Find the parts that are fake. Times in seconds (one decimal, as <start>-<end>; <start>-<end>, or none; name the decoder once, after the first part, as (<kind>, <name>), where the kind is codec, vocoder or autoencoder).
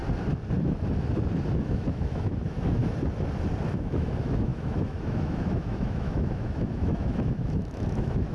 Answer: 1.6-2.8 (autoencoder, DAC-VAE); 3.7-8.3